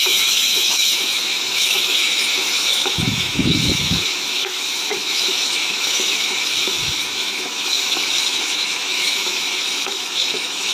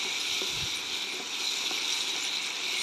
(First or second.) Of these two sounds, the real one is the second